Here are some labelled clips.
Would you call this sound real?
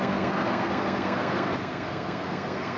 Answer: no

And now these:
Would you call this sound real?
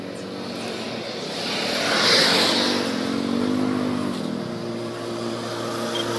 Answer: yes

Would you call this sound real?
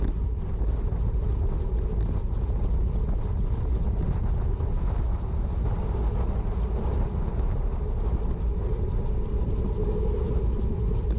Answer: yes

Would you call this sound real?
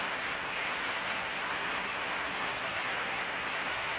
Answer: no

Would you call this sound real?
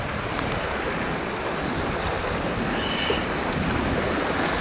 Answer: yes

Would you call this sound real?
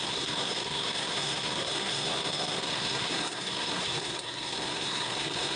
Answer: no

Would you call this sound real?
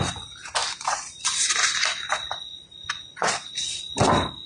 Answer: yes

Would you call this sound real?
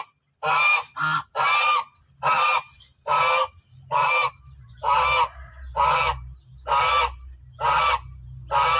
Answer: yes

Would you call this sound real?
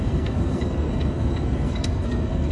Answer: no